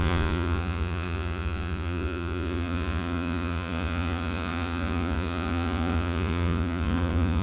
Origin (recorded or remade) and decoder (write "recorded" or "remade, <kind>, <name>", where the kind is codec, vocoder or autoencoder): remade, vocoder, Vocos